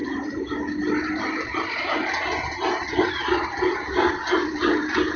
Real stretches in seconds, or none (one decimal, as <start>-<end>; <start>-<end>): 0.0-5.2